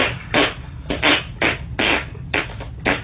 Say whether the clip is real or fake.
real